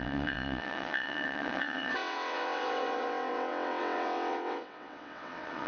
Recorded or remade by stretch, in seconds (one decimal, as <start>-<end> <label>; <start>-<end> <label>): 0.0-5.7 remade